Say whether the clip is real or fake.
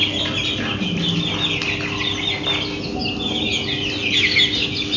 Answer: real